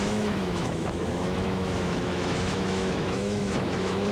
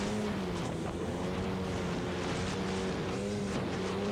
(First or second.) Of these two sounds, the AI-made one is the first